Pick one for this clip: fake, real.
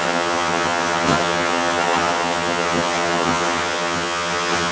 fake